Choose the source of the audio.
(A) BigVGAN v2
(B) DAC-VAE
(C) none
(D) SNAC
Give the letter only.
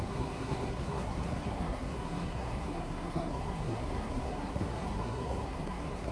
D